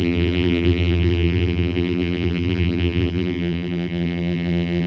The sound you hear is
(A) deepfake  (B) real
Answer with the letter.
A